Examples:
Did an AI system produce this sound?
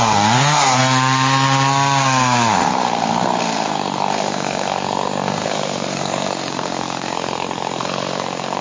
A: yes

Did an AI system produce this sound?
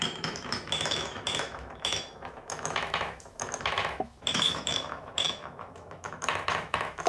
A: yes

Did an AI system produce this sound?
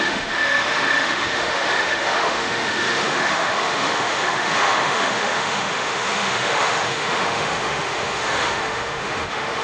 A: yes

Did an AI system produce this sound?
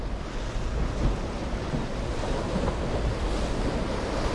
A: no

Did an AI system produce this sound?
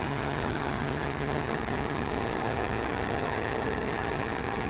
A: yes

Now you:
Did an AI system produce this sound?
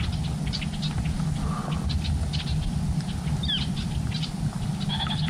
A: no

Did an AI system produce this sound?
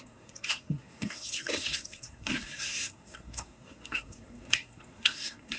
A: yes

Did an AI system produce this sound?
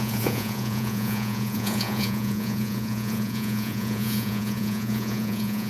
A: yes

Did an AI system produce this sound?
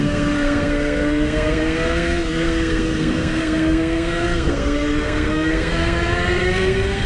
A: yes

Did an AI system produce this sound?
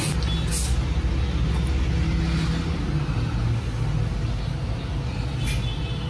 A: no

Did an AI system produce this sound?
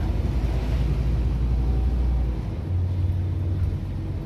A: no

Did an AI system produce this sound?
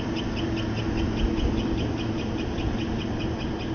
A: no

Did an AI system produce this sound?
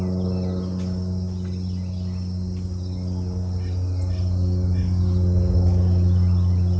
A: no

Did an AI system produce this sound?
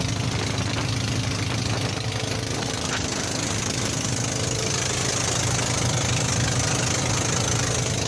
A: no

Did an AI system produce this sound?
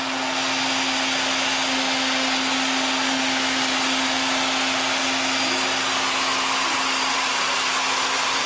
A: no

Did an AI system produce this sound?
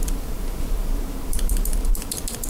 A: yes